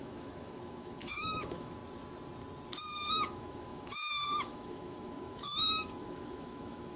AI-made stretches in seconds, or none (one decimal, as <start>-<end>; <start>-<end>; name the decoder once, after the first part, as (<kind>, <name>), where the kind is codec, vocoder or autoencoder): 0.0-1.8 (autoencoder, DAC-VAE); 3.1-7.0